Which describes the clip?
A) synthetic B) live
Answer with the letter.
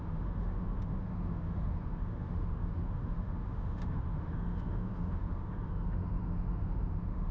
A